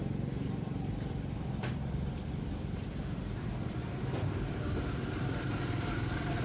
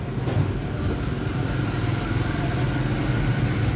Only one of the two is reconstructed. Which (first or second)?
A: first